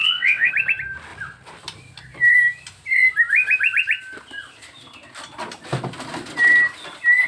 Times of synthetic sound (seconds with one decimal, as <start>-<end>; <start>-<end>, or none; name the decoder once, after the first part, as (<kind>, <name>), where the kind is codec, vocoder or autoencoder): 0.0-0.5 (vocoder, WaveNeXt)